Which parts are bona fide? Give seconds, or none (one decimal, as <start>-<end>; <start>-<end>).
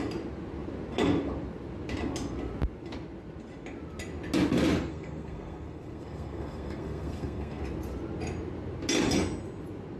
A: 0.0-4.9; 7.6-10.0